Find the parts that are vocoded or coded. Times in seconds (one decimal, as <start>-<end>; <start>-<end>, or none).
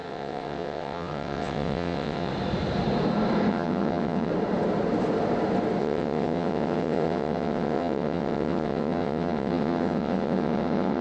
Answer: 0.0-2.3; 3.5-4.3; 5.8-11.0